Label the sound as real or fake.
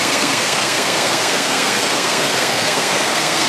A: fake